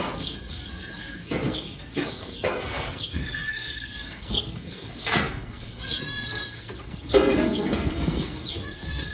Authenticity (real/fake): fake